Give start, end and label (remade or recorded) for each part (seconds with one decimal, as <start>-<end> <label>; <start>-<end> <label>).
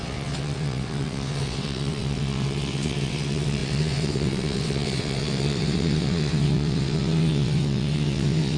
0.0-8.6 remade